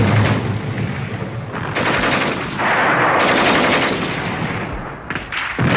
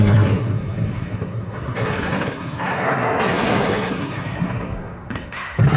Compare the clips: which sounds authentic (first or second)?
first